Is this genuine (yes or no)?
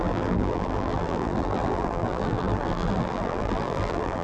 no